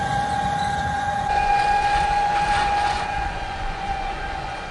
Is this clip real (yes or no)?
no